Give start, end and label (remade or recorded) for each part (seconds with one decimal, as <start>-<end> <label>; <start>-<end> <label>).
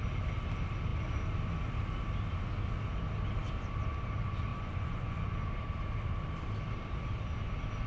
0.0-4.5 recorded; 4.5-5.2 remade; 5.2-7.9 recorded